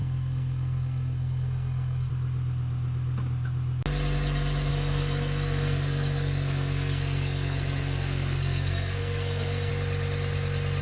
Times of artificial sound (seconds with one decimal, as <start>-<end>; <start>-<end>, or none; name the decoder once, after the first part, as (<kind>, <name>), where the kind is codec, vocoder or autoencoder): 0.0-2.1 (codec, SNAC); 4.7-9.7